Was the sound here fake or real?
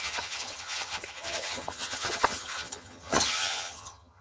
fake